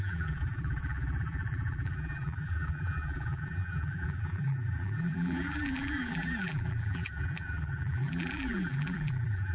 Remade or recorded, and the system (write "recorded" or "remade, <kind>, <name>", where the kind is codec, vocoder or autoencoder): remade, vocoder, BigVGAN v2